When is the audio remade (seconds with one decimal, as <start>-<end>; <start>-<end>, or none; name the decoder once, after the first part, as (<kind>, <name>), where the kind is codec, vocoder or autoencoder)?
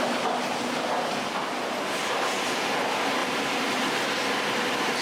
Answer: 3.2-3.9 (vocoder, BigVGAN v2)